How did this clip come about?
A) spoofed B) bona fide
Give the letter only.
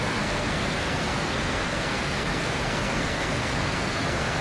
A